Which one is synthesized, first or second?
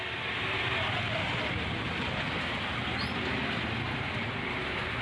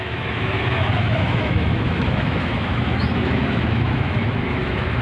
second